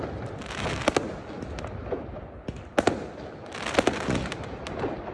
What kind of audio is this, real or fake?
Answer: real